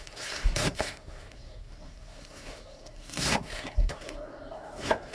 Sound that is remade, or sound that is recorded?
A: remade